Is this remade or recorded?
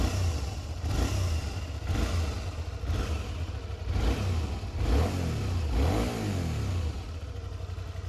recorded